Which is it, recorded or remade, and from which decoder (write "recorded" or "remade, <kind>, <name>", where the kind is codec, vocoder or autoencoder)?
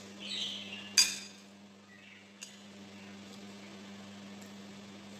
recorded